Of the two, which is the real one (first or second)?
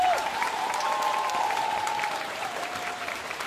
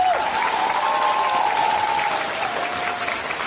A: second